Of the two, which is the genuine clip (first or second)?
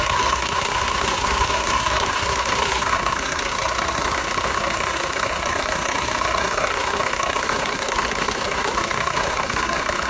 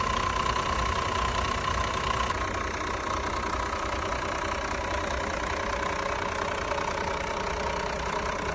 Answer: second